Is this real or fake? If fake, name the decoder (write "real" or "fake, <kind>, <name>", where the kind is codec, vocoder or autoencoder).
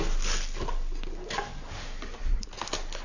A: real